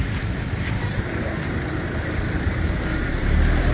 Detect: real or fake fake